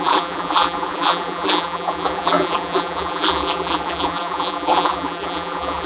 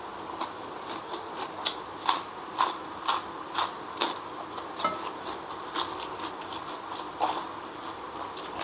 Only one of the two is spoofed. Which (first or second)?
first